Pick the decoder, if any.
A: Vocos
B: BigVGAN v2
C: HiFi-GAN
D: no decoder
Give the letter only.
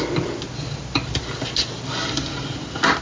D